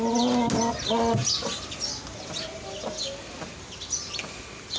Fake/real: real